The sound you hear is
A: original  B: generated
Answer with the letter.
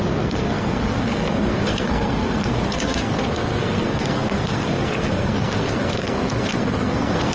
B